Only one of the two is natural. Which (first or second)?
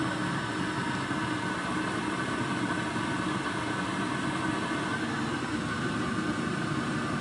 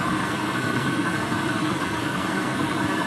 first